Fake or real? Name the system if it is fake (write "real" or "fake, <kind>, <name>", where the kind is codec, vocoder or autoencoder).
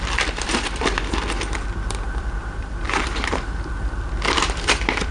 fake, vocoder, BigVGAN v2